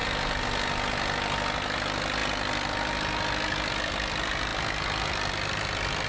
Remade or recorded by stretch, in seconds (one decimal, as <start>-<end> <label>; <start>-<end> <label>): 0.0-6.1 recorded